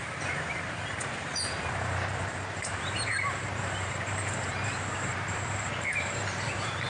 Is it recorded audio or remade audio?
remade